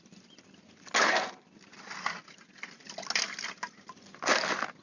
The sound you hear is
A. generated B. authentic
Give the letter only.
B